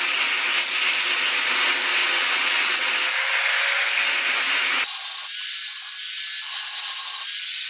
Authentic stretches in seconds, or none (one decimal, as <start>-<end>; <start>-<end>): 0.0-2.0; 2.9-7.7